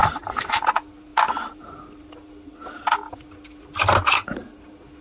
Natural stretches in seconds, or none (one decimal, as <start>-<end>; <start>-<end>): 0.0-5.0